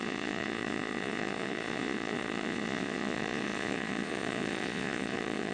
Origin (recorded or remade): remade